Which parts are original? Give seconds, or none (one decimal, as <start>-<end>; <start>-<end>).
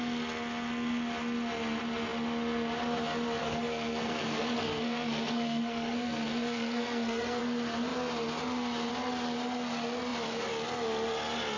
0.0-3.4; 7.4-11.6